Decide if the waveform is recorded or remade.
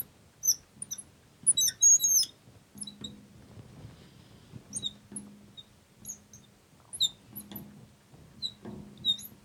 recorded